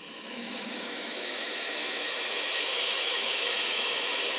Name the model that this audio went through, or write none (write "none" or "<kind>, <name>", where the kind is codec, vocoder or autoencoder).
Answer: autoencoder, DAC-VAE